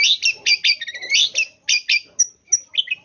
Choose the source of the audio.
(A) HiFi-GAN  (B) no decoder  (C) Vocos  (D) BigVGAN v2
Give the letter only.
B